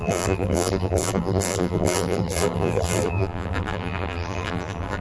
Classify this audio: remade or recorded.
remade